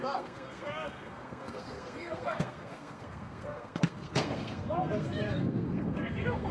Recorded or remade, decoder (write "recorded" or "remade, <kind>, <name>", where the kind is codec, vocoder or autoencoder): remade, codec, SNAC